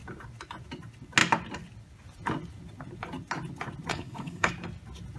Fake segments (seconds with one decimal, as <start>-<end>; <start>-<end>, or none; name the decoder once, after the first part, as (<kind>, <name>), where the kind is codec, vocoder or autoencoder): 3.9-4.5 (codec, HILCodec)